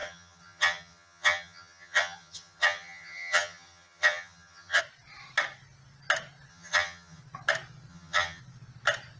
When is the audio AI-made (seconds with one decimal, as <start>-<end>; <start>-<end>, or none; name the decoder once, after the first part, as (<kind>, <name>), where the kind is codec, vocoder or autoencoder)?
0.0-4.8 (vocoder, HiFi-GAN); 6.5-7.2; 7.9-8.4